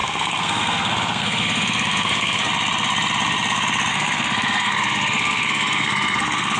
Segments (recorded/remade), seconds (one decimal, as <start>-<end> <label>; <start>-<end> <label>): 0.0-2.5 remade; 2.5-3.9 recorded; 3.9-6.6 remade